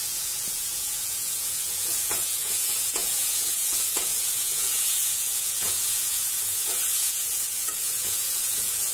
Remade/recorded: remade